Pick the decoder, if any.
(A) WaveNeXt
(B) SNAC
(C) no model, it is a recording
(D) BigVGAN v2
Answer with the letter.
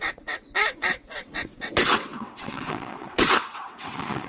A